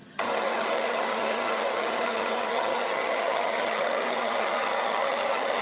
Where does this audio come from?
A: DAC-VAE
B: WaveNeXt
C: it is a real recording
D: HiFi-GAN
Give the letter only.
D